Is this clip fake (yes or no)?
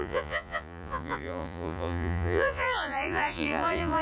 yes